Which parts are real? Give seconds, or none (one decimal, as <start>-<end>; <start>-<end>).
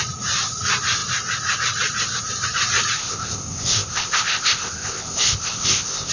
0.0-3.0